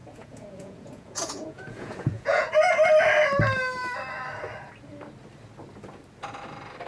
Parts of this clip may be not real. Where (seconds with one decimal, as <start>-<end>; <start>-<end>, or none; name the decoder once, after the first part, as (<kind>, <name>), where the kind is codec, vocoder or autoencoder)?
0.0-2.5 (vocoder, Vocos)